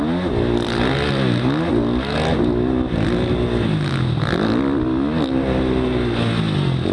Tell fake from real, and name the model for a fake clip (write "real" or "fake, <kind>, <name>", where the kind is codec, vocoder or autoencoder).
real